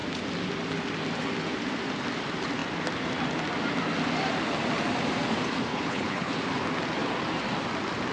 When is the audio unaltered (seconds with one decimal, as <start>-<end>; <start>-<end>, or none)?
0.0-5.7; 6.3-8.1